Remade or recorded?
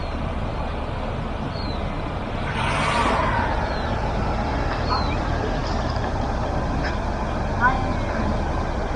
recorded